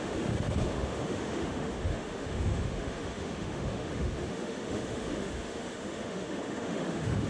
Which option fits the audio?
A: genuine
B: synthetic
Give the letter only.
B